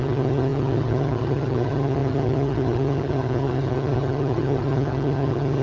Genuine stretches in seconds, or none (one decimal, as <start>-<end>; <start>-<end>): none